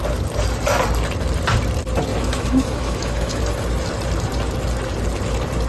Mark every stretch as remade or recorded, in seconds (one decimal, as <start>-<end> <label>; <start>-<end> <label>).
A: 0.0-2.1 recorded; 2.1-3.4 remade; 3.4-5.7 recorded